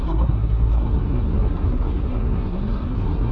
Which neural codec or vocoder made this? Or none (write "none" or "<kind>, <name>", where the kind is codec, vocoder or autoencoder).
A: codec, SNAC